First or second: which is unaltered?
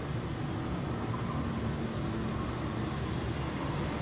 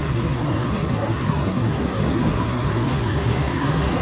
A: first